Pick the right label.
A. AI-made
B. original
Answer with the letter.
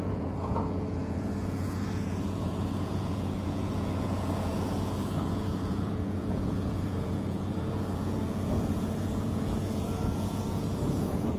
A